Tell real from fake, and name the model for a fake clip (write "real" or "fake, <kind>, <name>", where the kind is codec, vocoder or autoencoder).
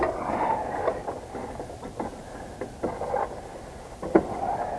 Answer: real